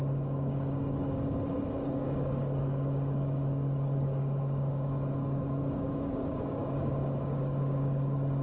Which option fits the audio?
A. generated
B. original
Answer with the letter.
A